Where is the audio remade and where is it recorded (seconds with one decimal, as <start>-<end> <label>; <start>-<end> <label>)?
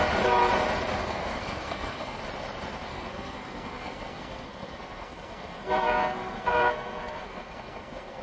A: 0.0-1.0 recorded; 1.0-2.2 remade; 2.2-2.9 recorded; 2.9-8.2 remade